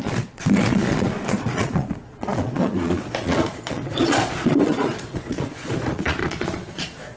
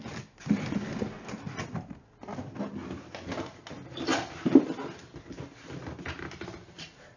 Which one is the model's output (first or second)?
first